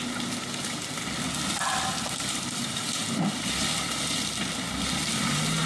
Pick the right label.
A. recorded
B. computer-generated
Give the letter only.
A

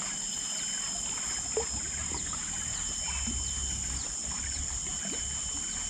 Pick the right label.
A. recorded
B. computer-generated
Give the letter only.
A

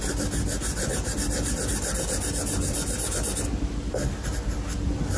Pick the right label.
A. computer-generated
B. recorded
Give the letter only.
B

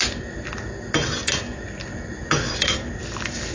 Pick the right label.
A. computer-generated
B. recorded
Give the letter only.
B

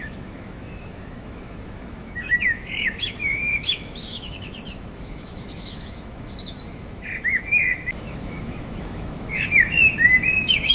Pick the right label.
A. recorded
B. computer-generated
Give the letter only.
B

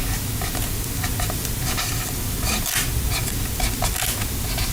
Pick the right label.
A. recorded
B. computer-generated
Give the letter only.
A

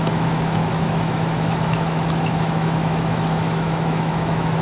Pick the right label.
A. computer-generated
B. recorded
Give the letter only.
A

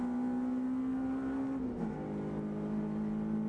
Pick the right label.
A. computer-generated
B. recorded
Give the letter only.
B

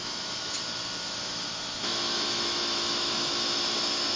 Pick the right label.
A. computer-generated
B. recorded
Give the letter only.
A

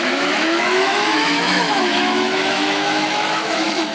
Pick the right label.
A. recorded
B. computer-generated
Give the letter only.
B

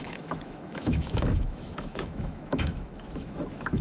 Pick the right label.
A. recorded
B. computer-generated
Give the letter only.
B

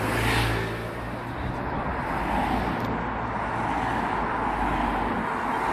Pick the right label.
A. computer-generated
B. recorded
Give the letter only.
B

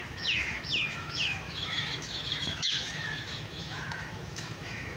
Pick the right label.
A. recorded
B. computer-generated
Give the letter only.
B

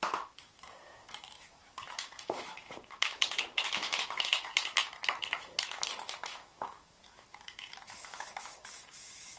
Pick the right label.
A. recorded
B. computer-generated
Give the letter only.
B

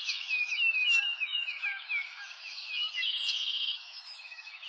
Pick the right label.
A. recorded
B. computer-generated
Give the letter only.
B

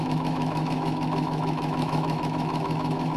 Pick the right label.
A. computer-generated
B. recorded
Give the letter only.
A